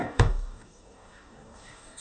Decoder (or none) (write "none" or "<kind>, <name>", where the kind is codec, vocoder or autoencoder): codec, DAC